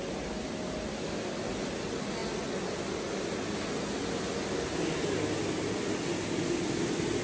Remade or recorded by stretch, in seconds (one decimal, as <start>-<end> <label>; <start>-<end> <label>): 0.0-7.2 recorded